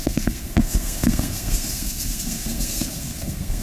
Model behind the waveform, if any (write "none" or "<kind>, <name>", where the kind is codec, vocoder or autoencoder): codec, SNAC